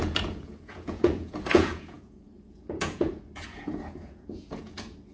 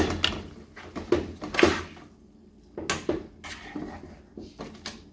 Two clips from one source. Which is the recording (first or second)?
second